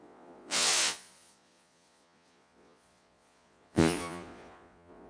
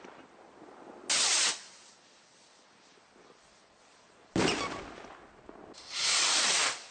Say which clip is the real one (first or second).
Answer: second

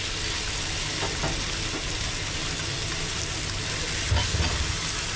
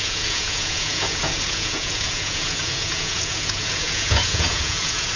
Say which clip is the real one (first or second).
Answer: first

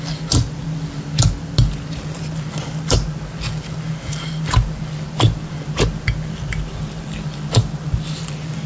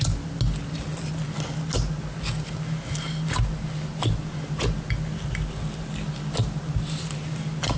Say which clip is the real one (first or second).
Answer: second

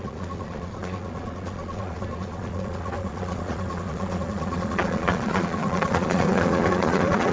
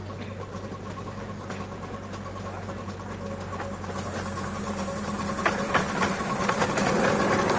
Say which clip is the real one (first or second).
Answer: second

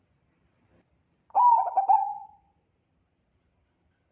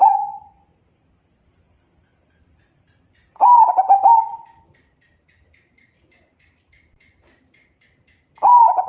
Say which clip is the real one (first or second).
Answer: second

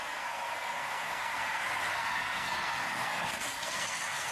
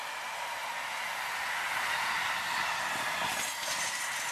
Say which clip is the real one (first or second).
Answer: second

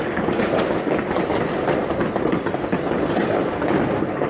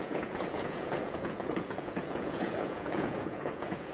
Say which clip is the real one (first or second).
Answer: first